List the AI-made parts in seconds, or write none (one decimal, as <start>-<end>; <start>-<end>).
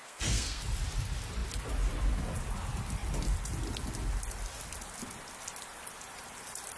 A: 0.0-0.6